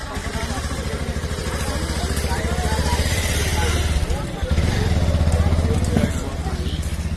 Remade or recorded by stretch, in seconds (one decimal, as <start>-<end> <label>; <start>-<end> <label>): 0.0-7.2 recorded